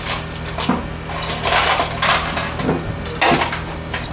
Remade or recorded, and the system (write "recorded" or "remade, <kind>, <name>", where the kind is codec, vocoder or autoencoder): recorded